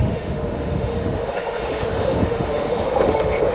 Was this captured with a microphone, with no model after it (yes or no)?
no